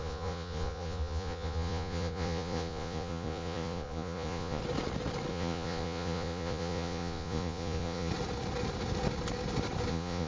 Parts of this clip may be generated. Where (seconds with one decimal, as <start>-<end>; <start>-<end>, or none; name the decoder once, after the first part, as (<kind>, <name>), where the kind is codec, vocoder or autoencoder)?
0.0-4.6 (vocoder, Vocos); 5.3-8.1; 9.9-10.3